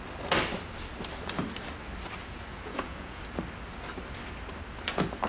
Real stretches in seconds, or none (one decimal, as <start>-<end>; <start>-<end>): 0.0-2.2; 3.2-5.3